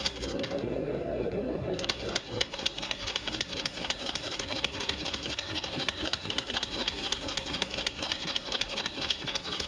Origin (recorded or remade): remade